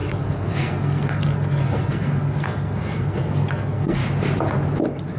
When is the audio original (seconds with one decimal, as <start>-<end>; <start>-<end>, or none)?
4.0-5.2